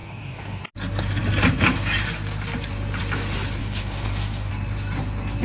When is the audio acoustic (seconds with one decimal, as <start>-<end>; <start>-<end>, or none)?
0.6-3.6; 4.5-5.4